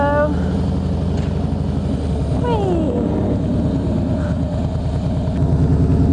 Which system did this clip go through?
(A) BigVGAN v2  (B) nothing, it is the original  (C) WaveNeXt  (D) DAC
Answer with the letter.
B